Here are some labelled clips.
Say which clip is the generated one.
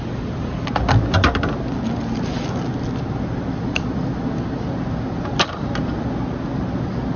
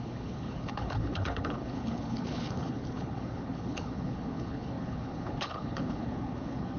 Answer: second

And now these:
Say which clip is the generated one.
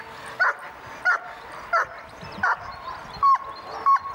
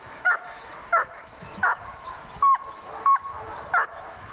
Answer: second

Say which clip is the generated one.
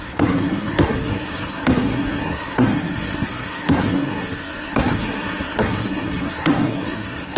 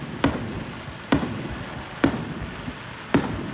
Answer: first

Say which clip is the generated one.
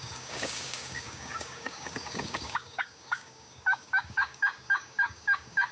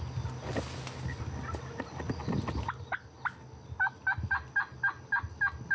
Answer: first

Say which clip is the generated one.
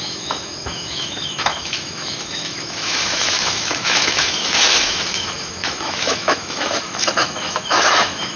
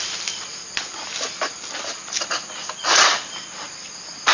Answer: first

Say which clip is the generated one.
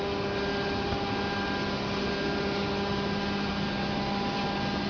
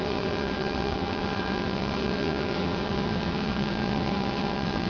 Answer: second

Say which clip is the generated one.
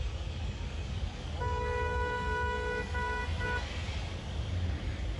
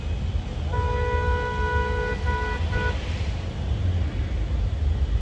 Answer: first